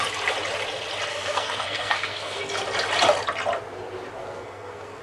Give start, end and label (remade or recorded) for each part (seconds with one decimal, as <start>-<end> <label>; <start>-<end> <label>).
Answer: 0.0-1.1 recorded; 1.1-2.4 remade; 2.4-4.2 recorded; 4.2-5.0 remade